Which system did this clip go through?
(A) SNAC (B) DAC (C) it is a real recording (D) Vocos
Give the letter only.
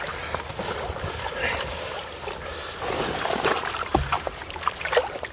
C